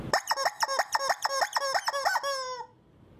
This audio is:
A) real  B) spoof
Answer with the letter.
A